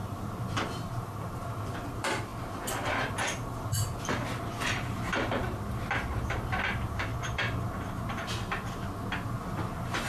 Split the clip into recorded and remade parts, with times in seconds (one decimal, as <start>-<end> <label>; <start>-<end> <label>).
0.0-7.1 remade; 7.1-7.6 recorded; 7.6-10.1 remade